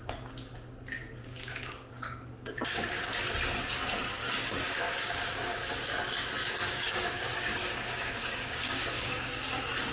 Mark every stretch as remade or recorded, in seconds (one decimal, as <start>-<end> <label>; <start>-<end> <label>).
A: 0.0-1.2 recorded; 1.2-2.6 remade; 2.6-4.2 recorded; 4.2-5.9 remade; 5.9-6.4 recorded; 6.4-9.3 remade; 9.3-9.9 recorded